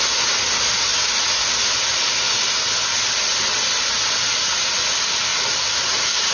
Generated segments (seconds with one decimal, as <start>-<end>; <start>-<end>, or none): 5.3-6.3